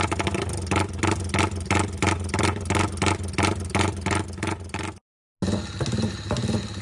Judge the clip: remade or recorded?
recorded